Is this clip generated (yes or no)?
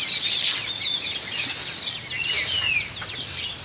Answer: no